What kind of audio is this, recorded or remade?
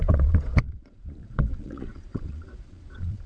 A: remade